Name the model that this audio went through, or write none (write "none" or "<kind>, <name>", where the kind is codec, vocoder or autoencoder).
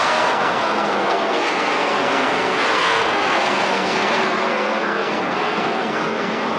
codec, SNAC